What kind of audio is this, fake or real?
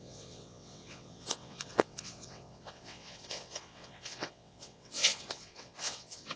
fake